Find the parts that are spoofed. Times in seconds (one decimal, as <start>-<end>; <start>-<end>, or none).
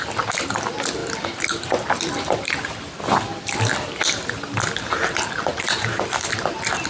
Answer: 0.0-1.0; 5.1-6.9